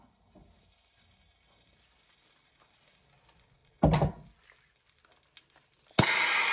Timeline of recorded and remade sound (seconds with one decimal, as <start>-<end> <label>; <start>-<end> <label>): 0.0-6.5 recorded